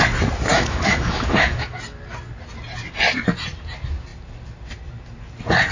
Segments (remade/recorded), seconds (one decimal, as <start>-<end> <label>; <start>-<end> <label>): 0.0-0.5 recorded; 0.5-1.8 remade; 1.8-5.7 recorded